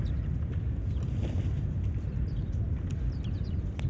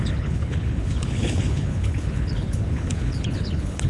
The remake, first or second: second